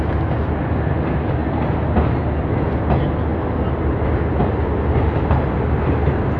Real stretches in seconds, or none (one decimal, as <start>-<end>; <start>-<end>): 0.0-6.4